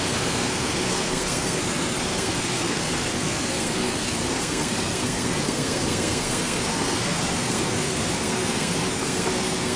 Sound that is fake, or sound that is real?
fake